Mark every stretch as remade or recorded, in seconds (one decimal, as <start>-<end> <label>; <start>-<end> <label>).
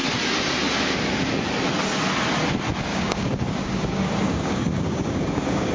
0.0-2.9 recorded; 2.9-5.7 remade